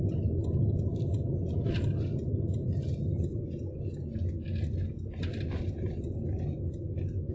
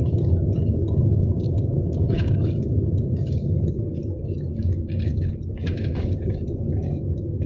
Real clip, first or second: first